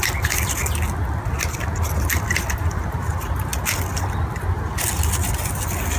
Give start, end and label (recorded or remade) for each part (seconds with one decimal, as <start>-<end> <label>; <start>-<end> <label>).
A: 0.0-6.0 recorded